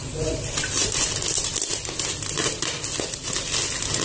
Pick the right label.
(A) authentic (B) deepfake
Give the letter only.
A